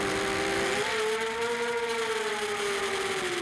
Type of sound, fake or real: real